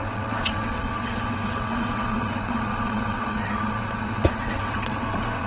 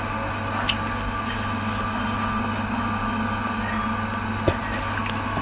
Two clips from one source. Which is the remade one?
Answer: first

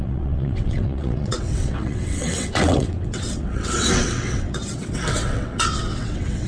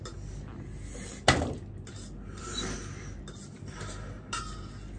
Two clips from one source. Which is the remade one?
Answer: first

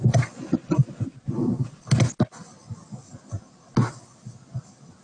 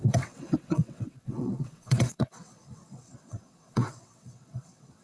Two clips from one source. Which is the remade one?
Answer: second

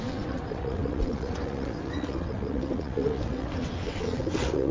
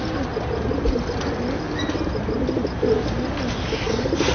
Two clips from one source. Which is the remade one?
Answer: first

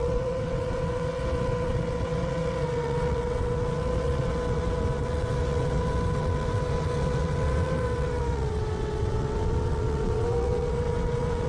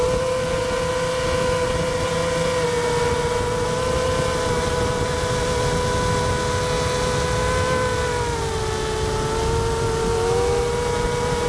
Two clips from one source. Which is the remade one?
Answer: first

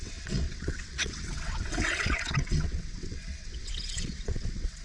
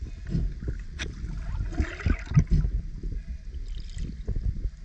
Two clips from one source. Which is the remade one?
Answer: first